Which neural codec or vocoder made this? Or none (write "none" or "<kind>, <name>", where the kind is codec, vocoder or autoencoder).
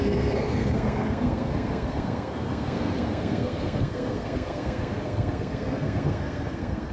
codec, SNAC